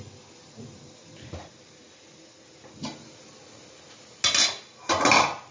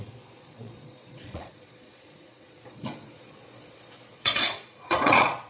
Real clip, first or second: first